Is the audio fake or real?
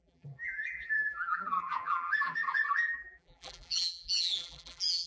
fake